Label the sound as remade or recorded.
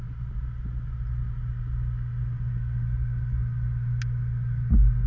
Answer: recorded